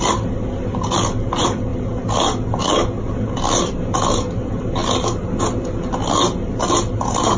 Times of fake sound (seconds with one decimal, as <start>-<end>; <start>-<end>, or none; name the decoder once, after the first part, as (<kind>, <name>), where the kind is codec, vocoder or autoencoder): none